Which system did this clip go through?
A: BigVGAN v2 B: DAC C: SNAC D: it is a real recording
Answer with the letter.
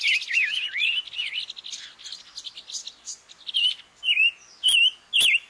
D